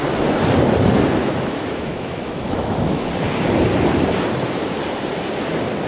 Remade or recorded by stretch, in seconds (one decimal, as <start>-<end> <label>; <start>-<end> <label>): 0.0-1.2 recorded; 1.2-3.1 remade; 3.1-5.9 recorded